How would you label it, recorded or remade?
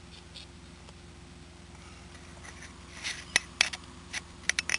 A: recorded